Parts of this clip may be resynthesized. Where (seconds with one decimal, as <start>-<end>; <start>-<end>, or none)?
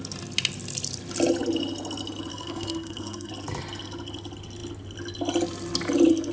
2.3-3.3